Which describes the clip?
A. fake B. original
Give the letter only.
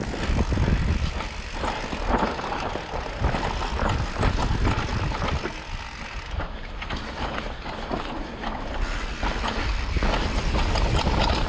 B